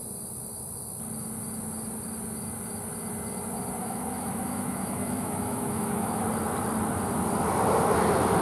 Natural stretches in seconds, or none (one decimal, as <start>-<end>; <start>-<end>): 0.0-3.8; 6.2-8.4